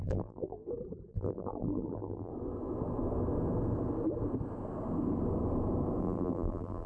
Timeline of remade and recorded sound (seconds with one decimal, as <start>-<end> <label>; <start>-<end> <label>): 0.0-0.6 remade; 0.6-1.1 recorded; 1.1-2.3 remade; 2.3-6.0 recorded; 6.0-6.9 remade